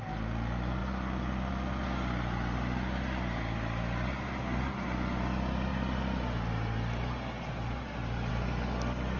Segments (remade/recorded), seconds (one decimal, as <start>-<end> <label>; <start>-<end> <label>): 0.0-9.2 recorded